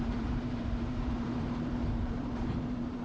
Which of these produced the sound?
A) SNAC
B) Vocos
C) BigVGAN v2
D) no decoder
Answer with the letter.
C